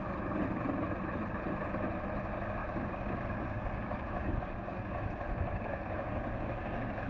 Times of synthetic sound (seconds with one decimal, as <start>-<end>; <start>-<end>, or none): 2.6-7.1